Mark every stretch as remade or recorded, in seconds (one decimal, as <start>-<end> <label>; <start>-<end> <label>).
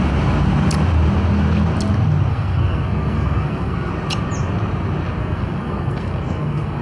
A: 0.0-2.3 recorded; 2.3-3.9 remade; 3.9-5.2 recorded; 5.2-6.8 remade